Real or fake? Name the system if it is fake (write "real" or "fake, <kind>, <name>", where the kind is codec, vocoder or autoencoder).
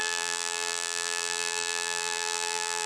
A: fake, vocoder, BigVGAN v2